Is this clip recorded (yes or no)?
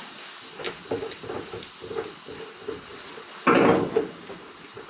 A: yes